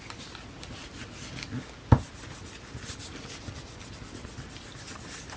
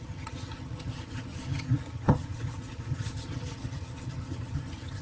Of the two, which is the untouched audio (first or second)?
first